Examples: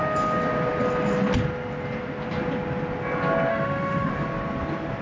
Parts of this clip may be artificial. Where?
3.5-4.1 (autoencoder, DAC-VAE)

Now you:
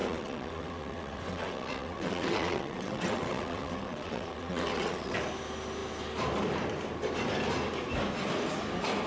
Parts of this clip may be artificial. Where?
0.0-5.2 (vocoder, WaveNeXt)

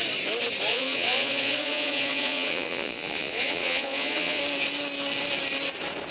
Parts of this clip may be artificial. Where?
0.7-4.4 (vocoder, Vocos)

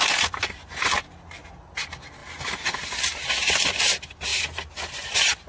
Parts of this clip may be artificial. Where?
none

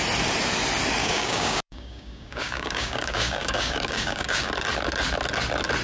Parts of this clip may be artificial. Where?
1.0-4.5 (codec, DAC)

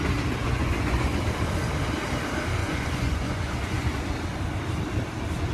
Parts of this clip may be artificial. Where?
0.4-1.2 (vocoder, Vocos); 2.6-4.0

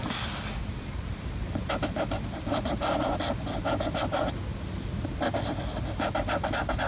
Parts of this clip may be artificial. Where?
0.6-3.0 (vocoder, BigVGAN v2)

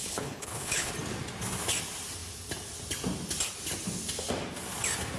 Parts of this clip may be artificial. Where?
0.0-0.9 (codec, HILCodec)